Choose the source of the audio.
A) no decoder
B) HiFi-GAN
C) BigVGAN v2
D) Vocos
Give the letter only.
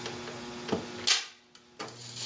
A